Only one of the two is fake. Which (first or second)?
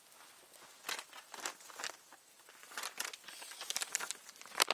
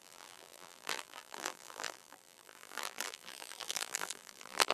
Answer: second